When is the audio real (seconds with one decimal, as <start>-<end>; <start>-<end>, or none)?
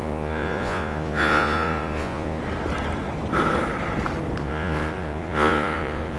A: 2.4-4.4